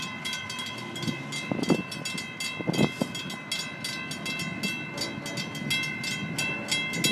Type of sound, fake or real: real